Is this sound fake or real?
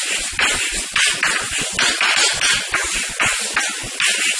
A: real